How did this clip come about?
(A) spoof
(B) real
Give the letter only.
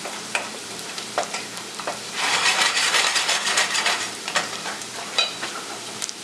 A